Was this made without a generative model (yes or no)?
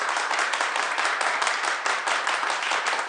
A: yes